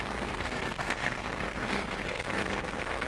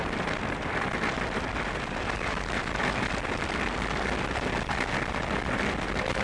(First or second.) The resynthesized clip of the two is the first